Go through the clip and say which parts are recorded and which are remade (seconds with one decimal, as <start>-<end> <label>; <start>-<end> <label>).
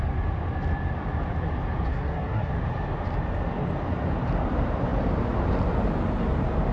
0.0-1.9 recorded; 1.9-2.5 remade; 2.5-6.7 recorded